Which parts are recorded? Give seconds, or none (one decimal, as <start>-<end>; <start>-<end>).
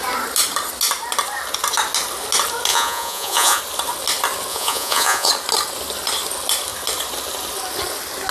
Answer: 0.0-2.7; 3.6-4.5; 5.3-8.3